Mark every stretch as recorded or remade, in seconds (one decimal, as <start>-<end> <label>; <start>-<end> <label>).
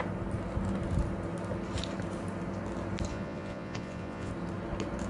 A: 0.0-3.1 recorded; 3.1-4.3 remade; 4.3-5.1 recorded